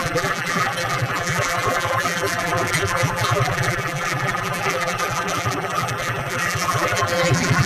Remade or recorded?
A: remade